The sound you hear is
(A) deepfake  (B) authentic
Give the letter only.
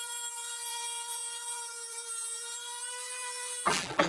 A